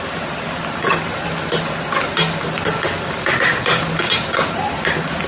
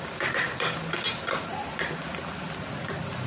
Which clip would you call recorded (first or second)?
second